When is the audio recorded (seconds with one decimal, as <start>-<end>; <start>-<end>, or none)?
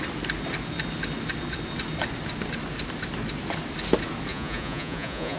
0.0-4.3